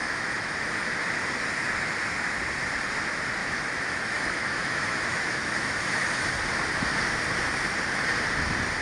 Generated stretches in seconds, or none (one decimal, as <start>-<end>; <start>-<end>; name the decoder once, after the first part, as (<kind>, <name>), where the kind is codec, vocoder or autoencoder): 0.0-0.7 (autoencoder, DAC-VAE); 3.4-6.3